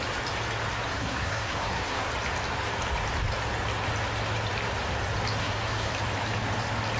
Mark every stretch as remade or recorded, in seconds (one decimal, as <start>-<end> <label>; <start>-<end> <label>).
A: 0.0-0.9 recorded; 0.9-2.1 remade; 2.1-5.4 recorded; 5.4-5.9 remade; 5.9-7.0 recorded